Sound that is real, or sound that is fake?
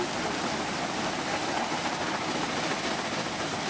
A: fake